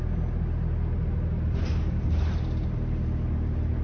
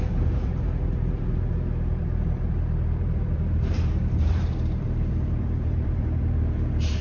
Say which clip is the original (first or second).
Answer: first